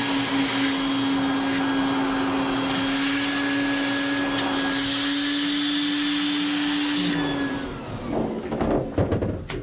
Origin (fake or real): real